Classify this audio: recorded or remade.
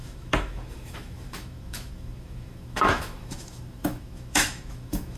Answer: remade